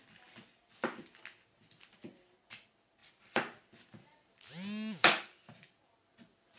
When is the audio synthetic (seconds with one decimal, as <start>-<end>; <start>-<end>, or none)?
none